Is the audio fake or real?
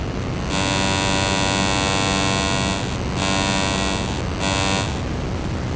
real